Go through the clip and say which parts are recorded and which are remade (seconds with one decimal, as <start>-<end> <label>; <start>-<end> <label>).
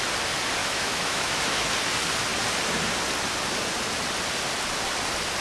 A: 0.0-0.6 recorded; 0.6-1.7 remade; 1.7-5.4 recorded